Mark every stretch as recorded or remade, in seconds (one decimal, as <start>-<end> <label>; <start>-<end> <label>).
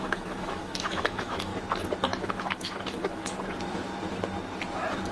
0.0-1.5 remade; 1.5-2.2 recorded; 2.2-3.2 remade; 3.2-5.1 recorded